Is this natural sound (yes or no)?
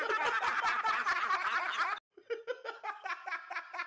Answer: yes